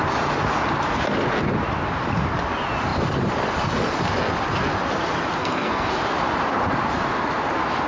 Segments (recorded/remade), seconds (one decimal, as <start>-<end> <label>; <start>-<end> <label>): 0.0-5.4 recorded; 5.4-5.9 remade; 5.9-7.9 recorded